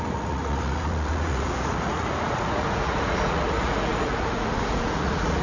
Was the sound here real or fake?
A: fake